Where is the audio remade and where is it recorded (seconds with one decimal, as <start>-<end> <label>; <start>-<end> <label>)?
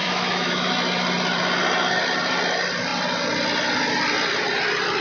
0.0-0.7 remade; 0.7-5.0 recorded